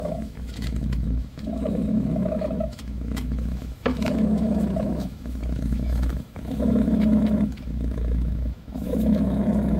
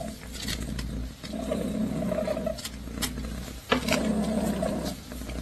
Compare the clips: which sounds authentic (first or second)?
second